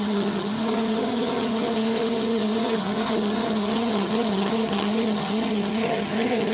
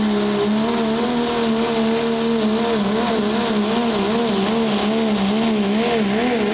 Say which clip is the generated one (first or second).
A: first